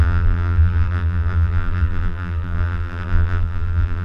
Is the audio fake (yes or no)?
yes